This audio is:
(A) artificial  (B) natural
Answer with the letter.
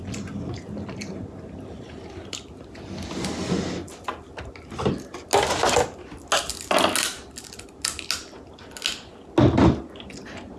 B